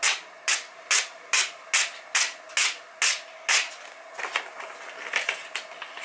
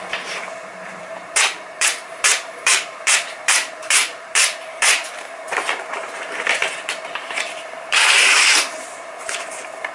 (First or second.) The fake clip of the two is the second